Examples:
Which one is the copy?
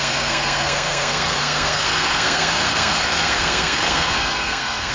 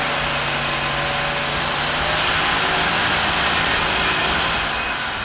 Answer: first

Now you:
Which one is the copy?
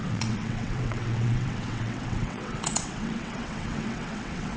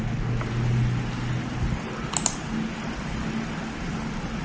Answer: first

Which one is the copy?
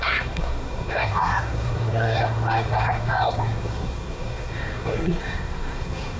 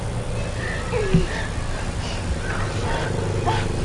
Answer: first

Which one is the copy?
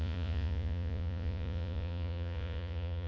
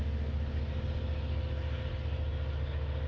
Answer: first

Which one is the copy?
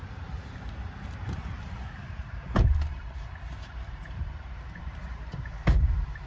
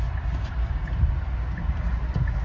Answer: first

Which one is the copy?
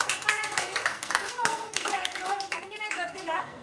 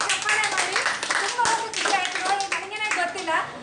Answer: first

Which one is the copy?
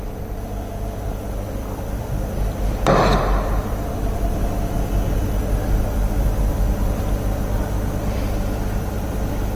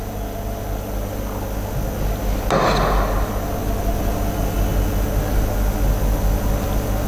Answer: first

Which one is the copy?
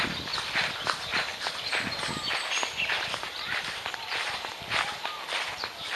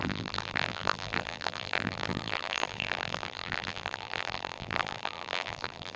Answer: second